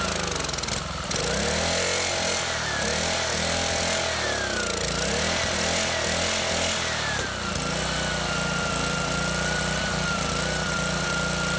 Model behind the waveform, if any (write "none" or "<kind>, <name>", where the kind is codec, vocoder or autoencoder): none